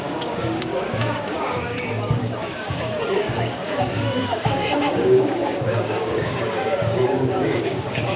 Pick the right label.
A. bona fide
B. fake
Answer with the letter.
B